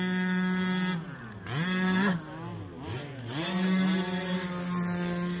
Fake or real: real